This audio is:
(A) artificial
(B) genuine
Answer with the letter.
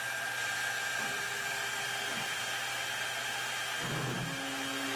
B